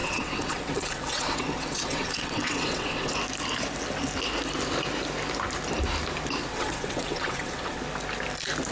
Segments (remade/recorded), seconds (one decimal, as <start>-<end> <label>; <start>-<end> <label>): 0.0-3.1 remade; 3.1-6.5 recorded; 6.5-7.8 remade; 7.8-8.7 recorded